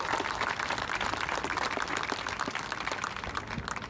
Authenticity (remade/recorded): recorded